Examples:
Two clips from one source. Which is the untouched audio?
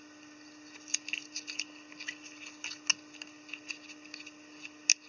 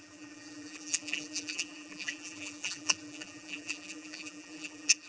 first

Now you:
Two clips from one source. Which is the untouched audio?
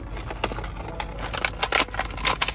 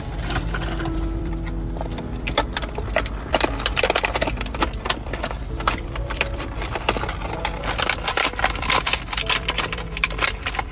first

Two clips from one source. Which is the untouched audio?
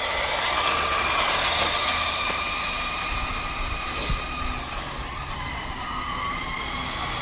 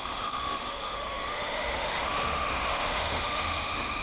first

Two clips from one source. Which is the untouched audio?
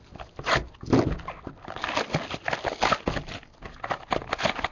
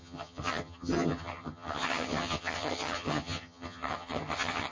first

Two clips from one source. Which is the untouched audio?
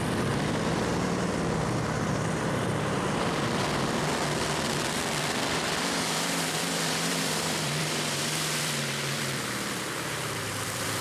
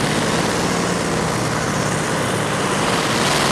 second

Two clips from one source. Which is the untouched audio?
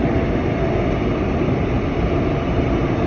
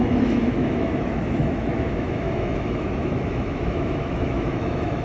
first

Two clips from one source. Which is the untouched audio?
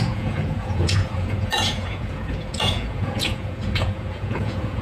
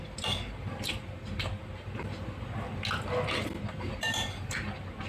second